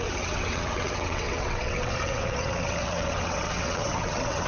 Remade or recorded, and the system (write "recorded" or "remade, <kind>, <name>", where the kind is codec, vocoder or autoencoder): remade, vocoder, WaveNeXt